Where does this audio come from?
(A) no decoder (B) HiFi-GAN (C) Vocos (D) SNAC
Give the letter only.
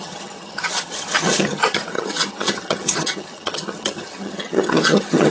B